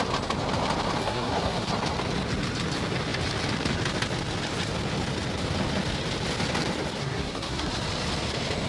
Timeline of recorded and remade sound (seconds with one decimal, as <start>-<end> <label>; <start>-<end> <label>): 0.0-1.0 recorded; 1.0-1.7 remade; 1.7-7.0 recorded; 7.0-7.7 remade; 7.7-8.7 recorded